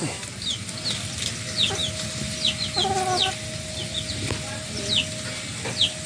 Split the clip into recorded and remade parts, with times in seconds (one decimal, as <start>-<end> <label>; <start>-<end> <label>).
0.0-6.1 recorded